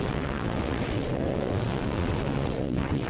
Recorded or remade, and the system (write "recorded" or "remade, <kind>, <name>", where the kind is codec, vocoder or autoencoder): remade, vocoder, WaveNeXt